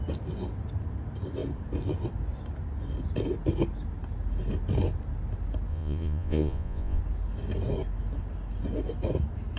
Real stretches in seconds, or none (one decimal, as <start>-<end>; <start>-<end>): 0.0-5.7; 7.0-9.6